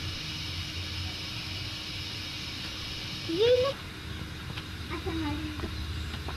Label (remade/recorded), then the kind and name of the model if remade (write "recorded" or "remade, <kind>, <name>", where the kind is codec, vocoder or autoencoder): recorded